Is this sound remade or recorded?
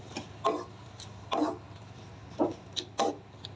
recorded